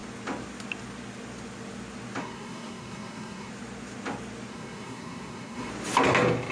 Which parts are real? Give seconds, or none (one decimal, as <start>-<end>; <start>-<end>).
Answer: 0.0-2.2; 3.5-4.5; 5.7-6.5